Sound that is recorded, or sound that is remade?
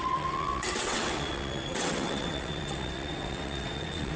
remade